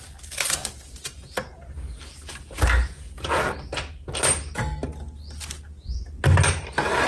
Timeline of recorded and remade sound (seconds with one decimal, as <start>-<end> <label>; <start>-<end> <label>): 0.0-1.2 recorded; 1.2-2.0 remade; 2.0-2.8 recorded; 2.8-3.4 remade; 3.4-7.1 recorded